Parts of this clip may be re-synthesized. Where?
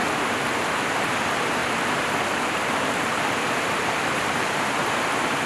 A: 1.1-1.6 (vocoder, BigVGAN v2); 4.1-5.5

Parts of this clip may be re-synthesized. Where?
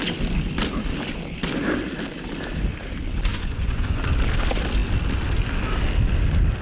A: 3.3-4.0 (vocoder, Vocos)